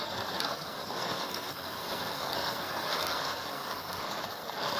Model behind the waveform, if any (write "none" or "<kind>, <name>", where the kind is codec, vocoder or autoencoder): codec, SNAC